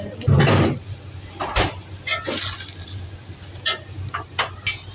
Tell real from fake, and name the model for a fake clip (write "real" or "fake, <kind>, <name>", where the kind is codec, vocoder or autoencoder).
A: real